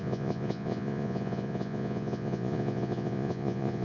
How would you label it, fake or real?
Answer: fake